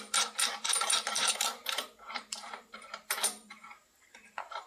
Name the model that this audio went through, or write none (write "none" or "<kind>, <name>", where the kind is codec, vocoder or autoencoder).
vocoder, BigVGAN v2